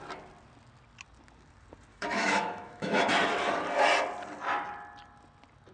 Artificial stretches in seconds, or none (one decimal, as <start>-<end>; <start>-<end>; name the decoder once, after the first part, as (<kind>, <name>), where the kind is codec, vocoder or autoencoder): 1.9-3.0 (autoencoder, DAC-VAE)